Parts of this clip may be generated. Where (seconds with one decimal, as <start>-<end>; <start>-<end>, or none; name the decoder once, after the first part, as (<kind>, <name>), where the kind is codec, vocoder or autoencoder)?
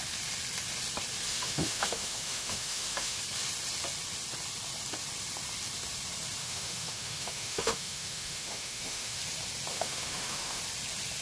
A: 1.3-3.2 (autoencoder, DAC-VAE); 6.4-9.2; 9.7-10.6